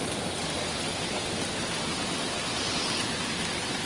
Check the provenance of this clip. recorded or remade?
recorded